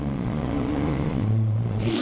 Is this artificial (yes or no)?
yes